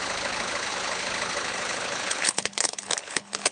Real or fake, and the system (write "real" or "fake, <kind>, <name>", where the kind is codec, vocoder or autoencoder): fake, codec, HILCodec